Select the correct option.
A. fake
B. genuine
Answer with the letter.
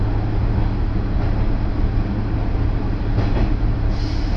B